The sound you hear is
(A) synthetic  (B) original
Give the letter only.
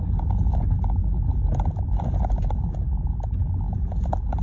B